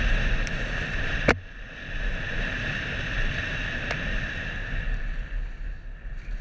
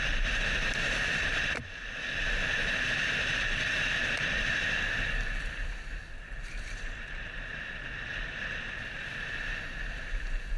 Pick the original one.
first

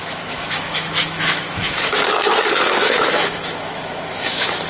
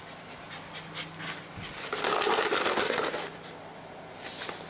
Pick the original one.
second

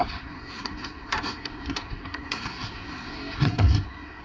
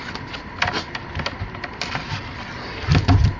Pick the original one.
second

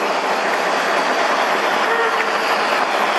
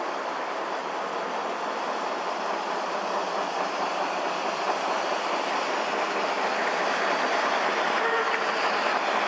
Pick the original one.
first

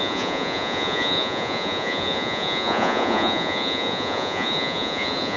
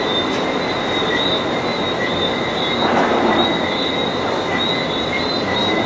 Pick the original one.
second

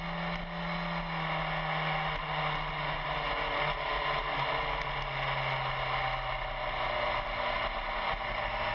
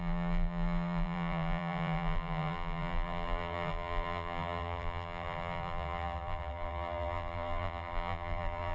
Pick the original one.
first